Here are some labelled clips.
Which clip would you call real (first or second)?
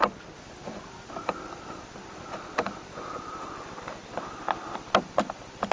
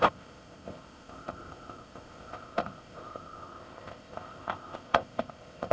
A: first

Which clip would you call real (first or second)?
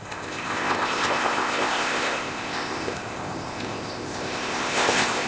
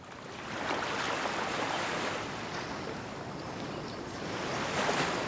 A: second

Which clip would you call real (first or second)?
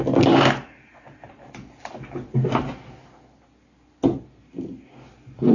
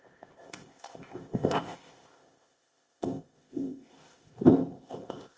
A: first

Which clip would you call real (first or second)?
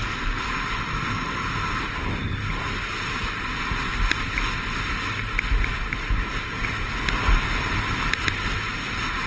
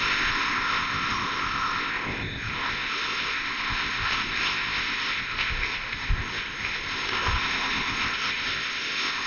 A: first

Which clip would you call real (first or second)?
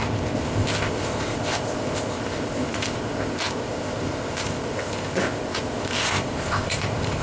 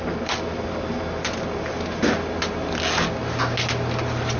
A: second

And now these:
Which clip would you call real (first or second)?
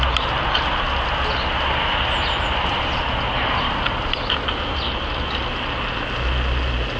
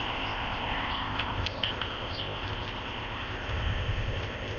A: first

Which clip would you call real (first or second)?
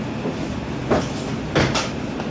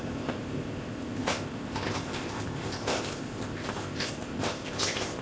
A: first